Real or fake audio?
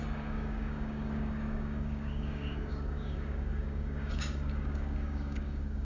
fake